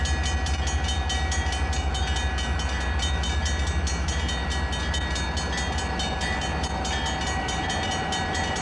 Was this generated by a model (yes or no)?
no